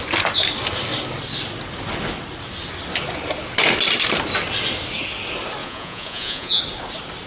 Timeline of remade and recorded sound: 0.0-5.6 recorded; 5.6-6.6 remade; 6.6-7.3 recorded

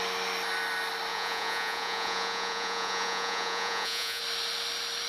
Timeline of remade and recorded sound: 0.0-1.1 recorded; 1.1-4.2 remade; 4.2-5.1 recorded

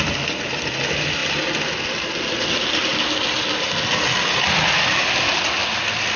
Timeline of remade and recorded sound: 0.0-6.2 recorded

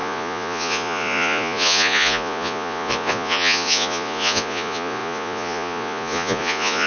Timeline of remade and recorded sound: 0.0-6.9 remade